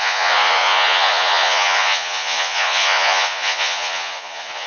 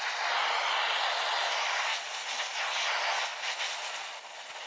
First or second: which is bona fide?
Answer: second